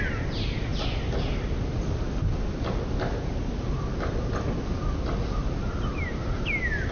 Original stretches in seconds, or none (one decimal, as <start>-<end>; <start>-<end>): 0.0-6.9